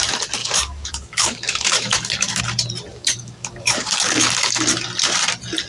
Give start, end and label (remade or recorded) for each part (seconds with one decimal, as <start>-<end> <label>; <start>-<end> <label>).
0.0-0.4 recorded; 0.4-2.4 remade; 2.4-2.9 recorded; 2.9-4.6 remade; 4.6-5.7 recorded